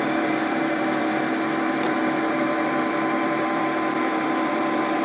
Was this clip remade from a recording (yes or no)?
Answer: yes